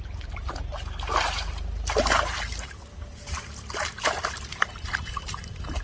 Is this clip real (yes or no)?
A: yes